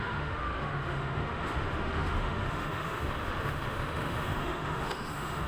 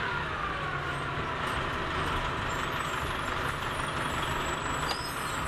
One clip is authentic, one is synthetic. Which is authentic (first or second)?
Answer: second